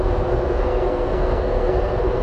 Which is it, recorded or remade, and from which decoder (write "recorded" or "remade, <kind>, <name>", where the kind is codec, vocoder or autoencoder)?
remade, codec, SNAC